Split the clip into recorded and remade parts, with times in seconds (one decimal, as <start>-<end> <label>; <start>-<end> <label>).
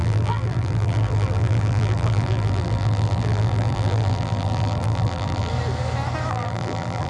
0.0-5.5 remade; 5.5-6.3 recorded; 6.3-7.1 remade